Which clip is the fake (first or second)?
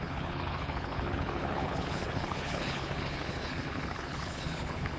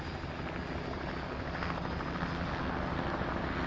first